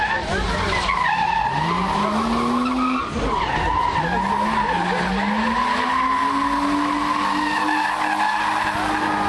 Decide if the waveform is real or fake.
real